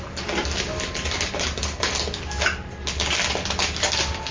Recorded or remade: recorded